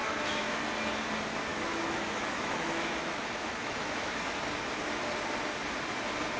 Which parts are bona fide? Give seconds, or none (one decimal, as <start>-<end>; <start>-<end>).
0.6-1.5; 4.4-6.4